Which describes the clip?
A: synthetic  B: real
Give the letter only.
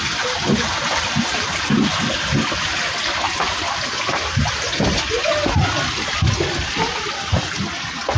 B